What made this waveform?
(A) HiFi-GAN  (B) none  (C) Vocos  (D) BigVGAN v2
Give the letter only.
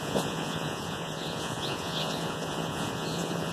C